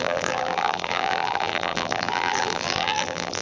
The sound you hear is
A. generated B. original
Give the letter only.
A